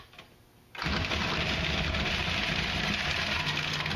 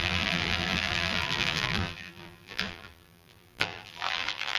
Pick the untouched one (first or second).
first